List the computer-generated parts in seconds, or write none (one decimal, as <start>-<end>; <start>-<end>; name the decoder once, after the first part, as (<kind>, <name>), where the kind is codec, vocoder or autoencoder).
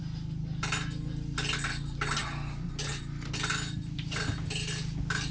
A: none